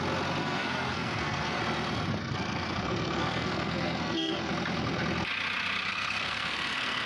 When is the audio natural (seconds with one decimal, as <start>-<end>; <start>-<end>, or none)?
0.0-0.4; 1.6-2.2; 4.5-5.9